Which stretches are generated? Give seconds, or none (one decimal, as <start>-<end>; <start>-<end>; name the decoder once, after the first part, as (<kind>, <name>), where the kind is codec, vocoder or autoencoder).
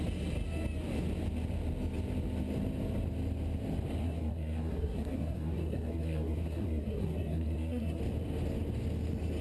4.0-8.0 (codec, SNAC)